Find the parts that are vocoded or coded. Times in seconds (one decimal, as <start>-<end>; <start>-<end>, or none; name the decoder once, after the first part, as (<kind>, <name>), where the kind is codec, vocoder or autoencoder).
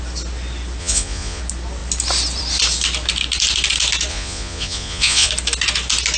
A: 0.8-1.4 (vocoder, Vocos); 4.1-5.3